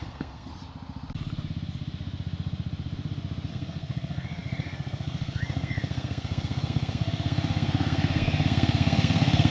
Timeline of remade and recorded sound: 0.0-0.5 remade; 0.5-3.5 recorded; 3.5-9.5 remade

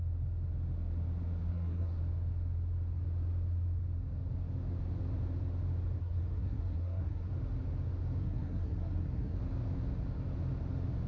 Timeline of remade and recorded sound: 0.0-1.5 recorded; 1.5-2.0 remade; 2.0-6.0 recorded; 6.0-7.3 remade; 7.3-8.2 recorded; 8.2-9.4 remade; 9.4-11.1 recorded

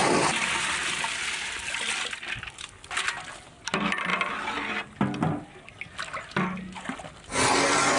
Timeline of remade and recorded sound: 0.0-8.0 recorded

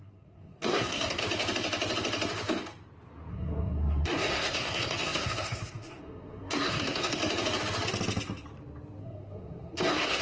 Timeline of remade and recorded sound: 0.0-1.2 remade; 1.2-3.3 recorded; 3.3-7.2 remade; 7.2-9.0 recorded; 9.0-10.2 remade

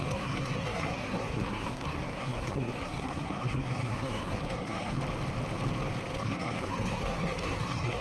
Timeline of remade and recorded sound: 0.0-5.0 remade; 5.0-6.1 recorded; 6.1-8.0 remade

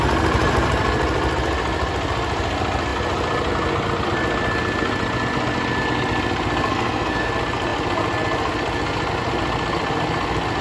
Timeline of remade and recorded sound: 0.0-6.7 recorded; 6.7-7.3 remade; 7.3-10.6 recorded

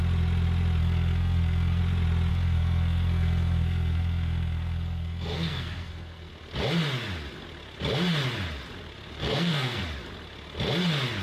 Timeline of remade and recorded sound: 0.0-0.8 recorded; 0.8-1.8 remade; 1.8-2.3 recorded; 2.3-6.3 remade; 6.3-9.2 recorded; 9.2-9.8 remade; 9.8-11.2 recorded